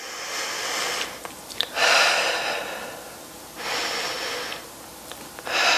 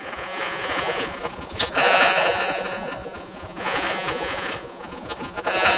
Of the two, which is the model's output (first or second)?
second